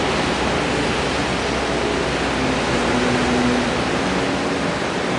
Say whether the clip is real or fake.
real